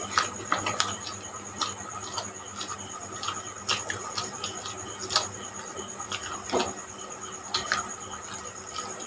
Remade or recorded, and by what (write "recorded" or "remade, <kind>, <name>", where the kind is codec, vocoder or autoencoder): recorded